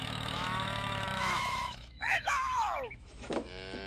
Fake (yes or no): yes